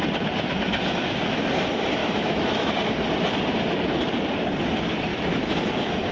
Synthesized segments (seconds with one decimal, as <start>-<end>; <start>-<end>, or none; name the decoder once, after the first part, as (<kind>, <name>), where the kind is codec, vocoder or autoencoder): 2.0-2.7 (autoencoder, DAC-VAE); 5.1-6.1